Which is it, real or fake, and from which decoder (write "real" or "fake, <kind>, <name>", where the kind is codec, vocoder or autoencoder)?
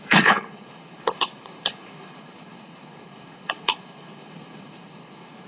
fake, codec, HILCodec